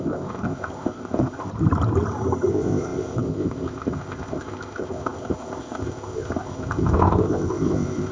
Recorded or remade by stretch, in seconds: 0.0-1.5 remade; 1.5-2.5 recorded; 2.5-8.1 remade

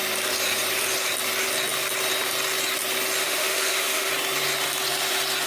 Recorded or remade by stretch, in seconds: 0.0-3.2 recorded; 3.2-4.1 remade; 4.1-5.5 recorded

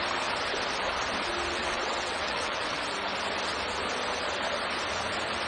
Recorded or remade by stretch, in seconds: 0.0-1.5 recorded; 1.5-2.8 remade; 2.8-5.5 recorded